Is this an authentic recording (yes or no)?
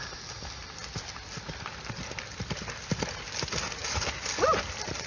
yes